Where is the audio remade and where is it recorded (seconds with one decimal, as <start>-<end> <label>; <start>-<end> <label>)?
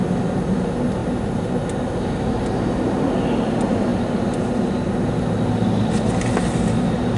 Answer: 0.0-7.2 recorded